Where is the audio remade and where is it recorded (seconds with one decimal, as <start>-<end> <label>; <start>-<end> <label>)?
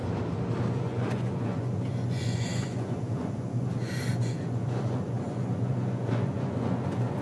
0.0-0.7 recorded; 0.7-7.2 remade